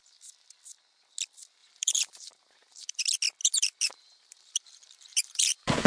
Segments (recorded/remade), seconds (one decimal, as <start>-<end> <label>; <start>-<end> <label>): 0.0-1.6 recorded; 1.6-3.0 remade; 3.0-3.4 recorded; 3.4-5.9 remade